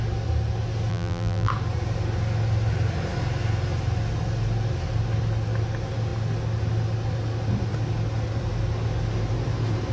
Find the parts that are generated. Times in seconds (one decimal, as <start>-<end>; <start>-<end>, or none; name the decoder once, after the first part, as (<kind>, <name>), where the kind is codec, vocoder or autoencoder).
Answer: 0.9-1.5 (vocoder, BigVGAN v2)